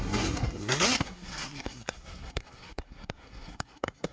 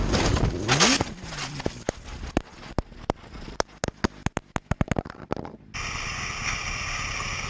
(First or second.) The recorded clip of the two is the second